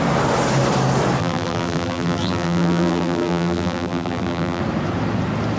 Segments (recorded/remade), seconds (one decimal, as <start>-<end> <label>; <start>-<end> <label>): 0.0-1.2 recorded; 1.2-4.6 remade; 4.6-5.6 recorded